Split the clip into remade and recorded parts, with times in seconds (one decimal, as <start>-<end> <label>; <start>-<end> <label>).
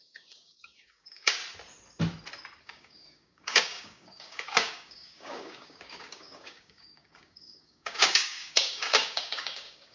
0.0-1.4 remade; 1.4-2.6 recorded; 2.6-9.9 remade